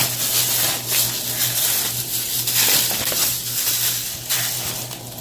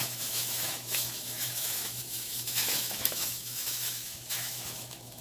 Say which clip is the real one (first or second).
first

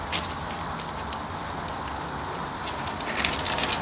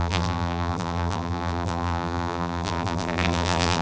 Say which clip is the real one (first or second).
first